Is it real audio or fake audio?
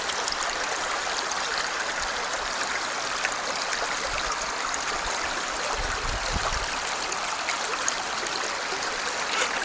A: real